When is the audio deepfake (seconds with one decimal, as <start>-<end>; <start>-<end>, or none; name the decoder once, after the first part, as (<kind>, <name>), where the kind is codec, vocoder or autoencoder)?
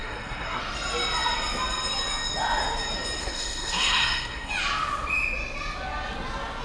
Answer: 0.0-0.6 (codec, SNAC); 3.2-4.5